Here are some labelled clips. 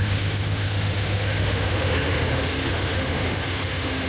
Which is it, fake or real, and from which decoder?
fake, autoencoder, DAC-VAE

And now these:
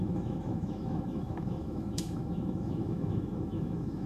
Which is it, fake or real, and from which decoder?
fake, autoencoder, DAC-VAE